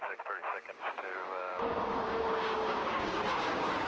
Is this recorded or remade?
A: remade